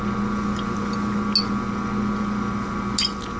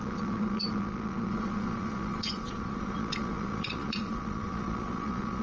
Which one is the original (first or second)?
first